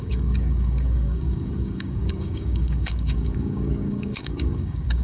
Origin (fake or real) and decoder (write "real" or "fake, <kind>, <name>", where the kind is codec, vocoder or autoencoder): fake, codec, DAC